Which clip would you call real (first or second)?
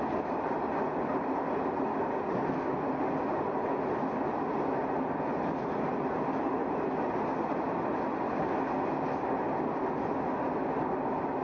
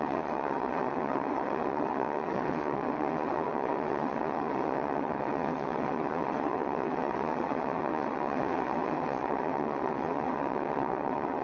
first